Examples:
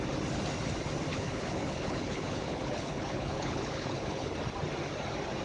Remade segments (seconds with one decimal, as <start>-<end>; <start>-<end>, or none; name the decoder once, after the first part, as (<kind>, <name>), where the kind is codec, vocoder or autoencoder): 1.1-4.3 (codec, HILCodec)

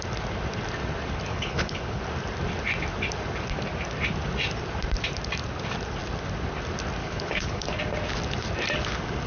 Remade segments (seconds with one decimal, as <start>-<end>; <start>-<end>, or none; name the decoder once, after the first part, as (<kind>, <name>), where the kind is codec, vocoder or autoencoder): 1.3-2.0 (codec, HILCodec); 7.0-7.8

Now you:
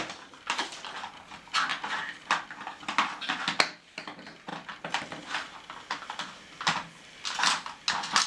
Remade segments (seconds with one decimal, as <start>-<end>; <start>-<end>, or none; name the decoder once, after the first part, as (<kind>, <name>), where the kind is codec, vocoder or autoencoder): none

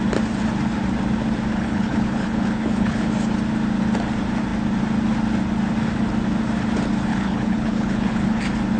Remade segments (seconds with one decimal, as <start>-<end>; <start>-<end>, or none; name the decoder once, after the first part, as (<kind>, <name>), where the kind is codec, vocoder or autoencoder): 1.5-3.1 (codec, HILCodec); 7.1-8.4

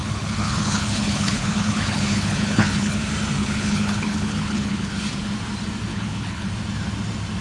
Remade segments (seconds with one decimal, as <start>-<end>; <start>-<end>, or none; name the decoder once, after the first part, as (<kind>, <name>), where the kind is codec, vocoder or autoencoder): 0.0-3.0 (codec, HILCodec); 3.4-4.9; 5.9-6.5

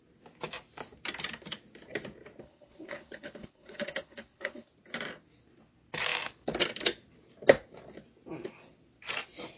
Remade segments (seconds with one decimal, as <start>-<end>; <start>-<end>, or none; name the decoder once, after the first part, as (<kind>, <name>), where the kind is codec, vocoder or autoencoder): 2.4-4.7 (codec, HILCodec)